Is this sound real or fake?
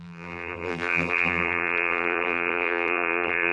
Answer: fake